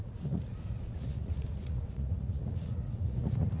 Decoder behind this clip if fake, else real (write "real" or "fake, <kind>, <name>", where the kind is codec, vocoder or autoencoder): fake, vocoder, Vocos